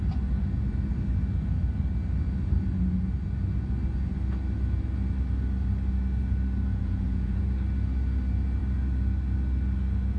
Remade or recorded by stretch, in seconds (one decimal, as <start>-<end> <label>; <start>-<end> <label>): 0.0-6.7 recorded; 6.7-7.4 remade; 7.4-10.2 recorded